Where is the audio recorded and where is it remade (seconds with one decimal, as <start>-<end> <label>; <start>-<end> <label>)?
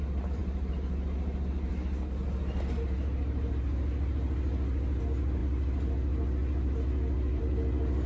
0.0-8.1 recorded